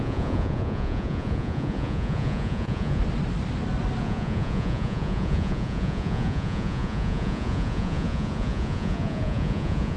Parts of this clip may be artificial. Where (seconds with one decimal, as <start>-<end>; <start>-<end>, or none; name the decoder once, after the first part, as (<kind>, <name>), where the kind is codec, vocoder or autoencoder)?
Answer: 0.0-3.0 (vocoder, Vocos); 4.0-10.0

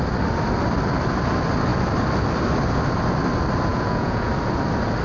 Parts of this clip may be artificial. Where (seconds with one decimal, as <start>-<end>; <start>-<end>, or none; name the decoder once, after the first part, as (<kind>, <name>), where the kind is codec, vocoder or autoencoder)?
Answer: 3.7-4.3 (vocoder, Vocos)

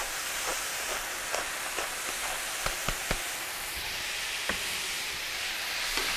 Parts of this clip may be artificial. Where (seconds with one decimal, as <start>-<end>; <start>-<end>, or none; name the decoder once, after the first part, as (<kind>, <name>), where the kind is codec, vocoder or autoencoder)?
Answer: 0.0-6.2 (vocoder, BigVGAN v2)

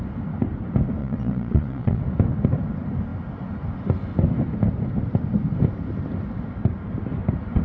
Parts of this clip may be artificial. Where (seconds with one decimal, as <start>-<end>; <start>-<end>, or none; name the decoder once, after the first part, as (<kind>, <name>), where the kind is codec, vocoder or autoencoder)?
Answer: 1.0-2.0 (vocoder, Vocos)